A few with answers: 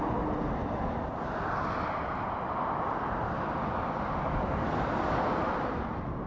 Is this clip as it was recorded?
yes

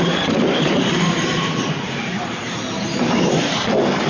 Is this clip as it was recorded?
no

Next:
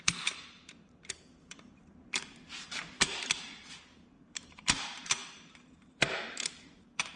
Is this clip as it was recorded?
no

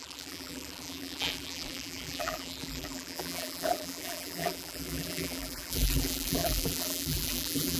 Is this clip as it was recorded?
no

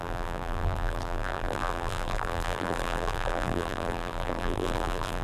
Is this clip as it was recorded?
no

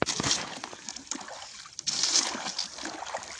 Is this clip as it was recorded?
yes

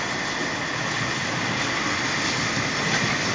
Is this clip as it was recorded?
yes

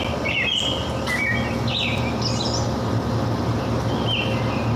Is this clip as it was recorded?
yes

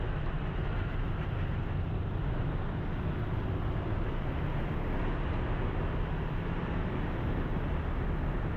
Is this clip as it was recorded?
yes